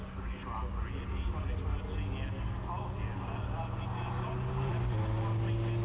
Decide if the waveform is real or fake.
real